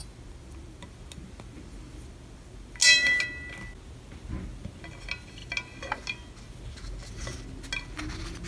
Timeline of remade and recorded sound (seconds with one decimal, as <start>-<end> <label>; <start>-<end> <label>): 0.0-8.5 recorded